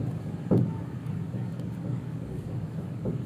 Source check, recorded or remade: remade